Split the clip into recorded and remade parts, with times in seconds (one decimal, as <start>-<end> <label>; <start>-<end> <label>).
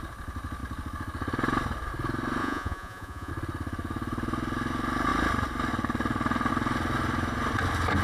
0.0-2.4 recorded; 2.4-3.3 remade; 3.3-8.0 recorded